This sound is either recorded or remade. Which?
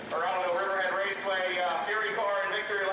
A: recorded